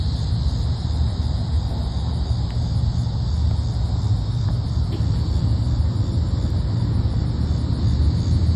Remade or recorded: recorded